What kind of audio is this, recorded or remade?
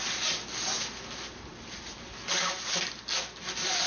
recorded